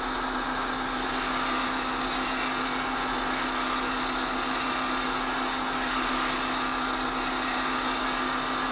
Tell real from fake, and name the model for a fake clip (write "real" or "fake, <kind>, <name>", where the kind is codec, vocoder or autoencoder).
real